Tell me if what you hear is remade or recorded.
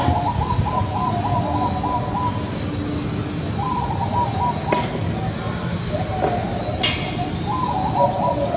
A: recorded